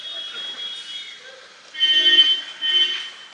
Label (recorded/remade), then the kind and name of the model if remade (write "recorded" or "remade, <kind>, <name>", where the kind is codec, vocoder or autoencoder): recorded